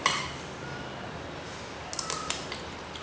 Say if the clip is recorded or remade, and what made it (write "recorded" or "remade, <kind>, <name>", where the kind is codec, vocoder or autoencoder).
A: recorded